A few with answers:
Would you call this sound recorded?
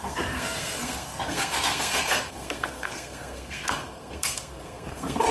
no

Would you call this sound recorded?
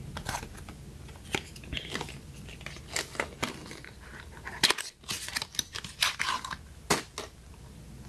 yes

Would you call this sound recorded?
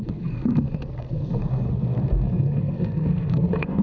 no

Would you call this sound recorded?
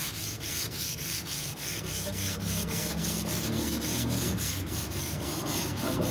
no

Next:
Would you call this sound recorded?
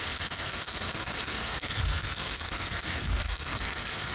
no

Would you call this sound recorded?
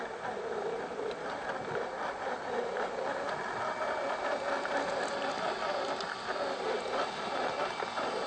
yes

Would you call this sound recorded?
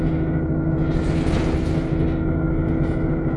yes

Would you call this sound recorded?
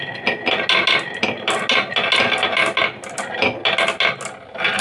yes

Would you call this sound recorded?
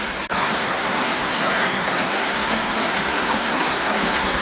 no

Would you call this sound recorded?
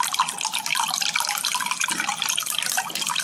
yes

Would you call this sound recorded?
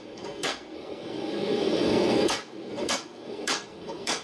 no